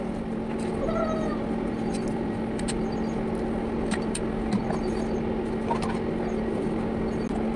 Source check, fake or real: real